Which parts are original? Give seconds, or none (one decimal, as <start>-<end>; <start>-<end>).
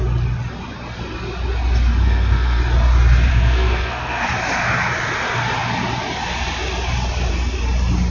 0.0-2.0; 2.6-3.3; 4.2-8.1